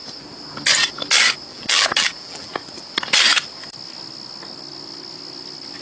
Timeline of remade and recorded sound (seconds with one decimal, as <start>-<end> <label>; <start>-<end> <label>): 0.0-1.5 recorded; 1.5-2.5 remade; 2.5-5.8 recorded

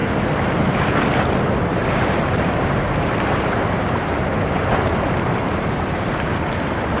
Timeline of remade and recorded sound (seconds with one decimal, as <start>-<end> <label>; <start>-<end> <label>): 0.0-1.9 recorded; 1.9-7.0 remade

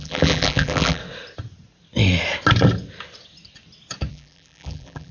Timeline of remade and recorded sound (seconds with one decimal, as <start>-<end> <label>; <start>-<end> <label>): 0.0-1.0 remade; 1.0-4.1 recorded; 4.1-5.1 remade

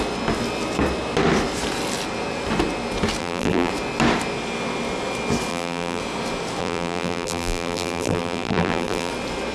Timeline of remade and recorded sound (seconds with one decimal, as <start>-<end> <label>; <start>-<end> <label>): 0.0-3.2 recorded; 3.2-3.7 remade; 3.7-5.5 recorded; 5.5-6.0 remade; 6.0-6.6 recorded; 6.6-9.1 remade; 9.1-9.5 recorded

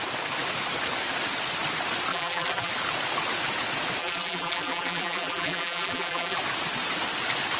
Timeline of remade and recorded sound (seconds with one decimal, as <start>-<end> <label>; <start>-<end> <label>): 0.0-2.1 recorded; 2.1-2.7 remade; 2.7-4.0 recorded; 4.0-6.4 remade; 6.4-7.6 recorded

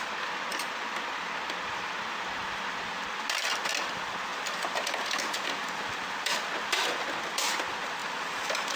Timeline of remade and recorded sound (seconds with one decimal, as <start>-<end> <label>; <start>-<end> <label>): 0.0-8.8 recorded

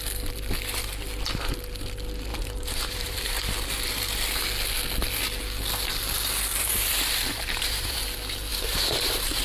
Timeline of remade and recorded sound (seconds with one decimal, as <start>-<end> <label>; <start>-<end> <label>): 0.0-2.3 recorded; 2.3-3.4 remade; 3.4-6.5 recorded; 6.5-8.0 remade; 8.0-8.5 recorded; 8.5-9.4 remade

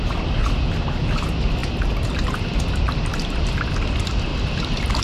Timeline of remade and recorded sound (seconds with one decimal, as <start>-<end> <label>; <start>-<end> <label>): 0.0-1.6 recorded; 1.6-3.6 remade; 3.6-4.3 recorded; 4.3-5.0 remade